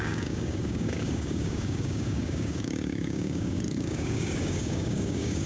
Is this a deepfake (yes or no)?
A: yes